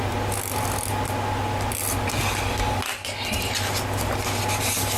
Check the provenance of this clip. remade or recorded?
recorded